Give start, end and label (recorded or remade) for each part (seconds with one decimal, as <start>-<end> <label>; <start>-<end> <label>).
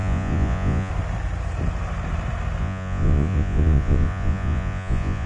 0.0-0.9 remade; 0.9-2.6 recorded; 2.6-5.3 remade